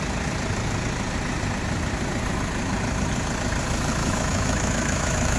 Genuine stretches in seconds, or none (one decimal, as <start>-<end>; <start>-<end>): 0.0-4.0